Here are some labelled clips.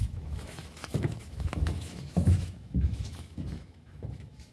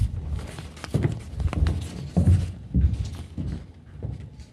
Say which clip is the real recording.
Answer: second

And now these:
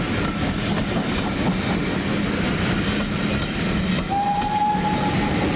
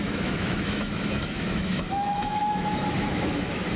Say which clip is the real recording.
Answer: first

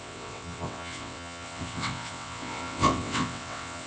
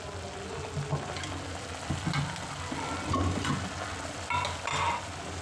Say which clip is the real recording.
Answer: second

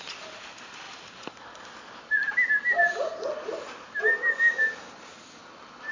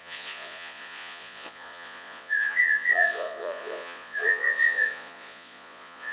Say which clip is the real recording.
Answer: first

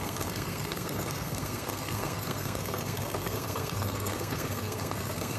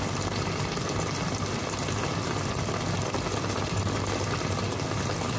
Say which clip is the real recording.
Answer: second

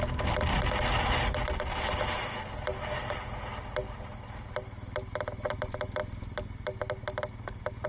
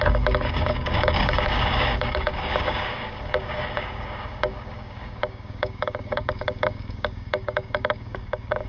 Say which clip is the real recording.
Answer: first